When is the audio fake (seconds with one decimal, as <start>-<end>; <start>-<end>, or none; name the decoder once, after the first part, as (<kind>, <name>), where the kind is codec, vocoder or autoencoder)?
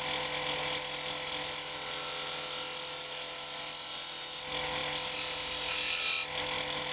none